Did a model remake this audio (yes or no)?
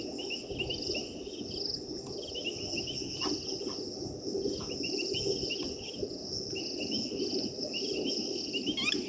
no